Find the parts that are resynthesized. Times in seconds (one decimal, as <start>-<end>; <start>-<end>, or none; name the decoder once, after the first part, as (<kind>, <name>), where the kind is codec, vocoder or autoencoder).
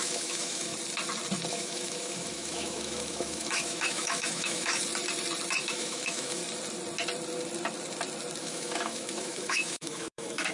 0.0-0.7 (autoencoder, DAC-VAE); 1.5-4.8; 5.6-6.4; 8.4-10.5